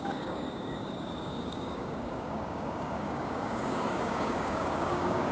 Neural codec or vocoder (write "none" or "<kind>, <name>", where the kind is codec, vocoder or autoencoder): codec, DAC